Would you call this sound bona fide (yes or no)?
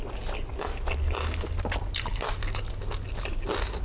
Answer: yes